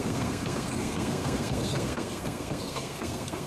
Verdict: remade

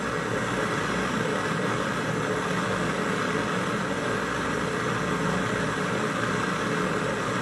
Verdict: recorded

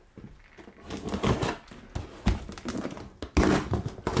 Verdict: recorded